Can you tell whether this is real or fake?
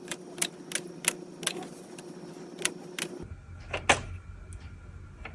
real